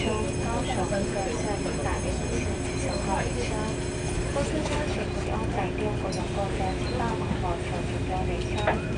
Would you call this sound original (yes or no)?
yes